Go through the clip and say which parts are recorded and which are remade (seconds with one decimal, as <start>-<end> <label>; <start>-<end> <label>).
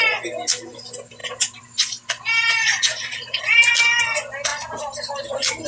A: 0.0-5.7 recorded